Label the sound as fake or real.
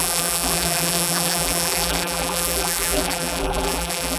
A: fake